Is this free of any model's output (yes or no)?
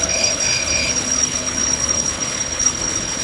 no